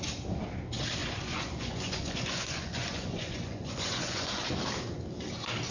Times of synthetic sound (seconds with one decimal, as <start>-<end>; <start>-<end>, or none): 1.0-4.4